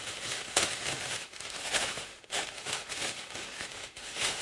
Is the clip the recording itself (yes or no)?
no